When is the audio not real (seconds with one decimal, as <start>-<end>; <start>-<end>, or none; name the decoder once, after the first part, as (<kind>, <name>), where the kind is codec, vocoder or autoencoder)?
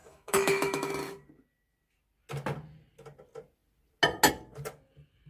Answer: 0.0-0.9 (autoencoder, DAC-VAE)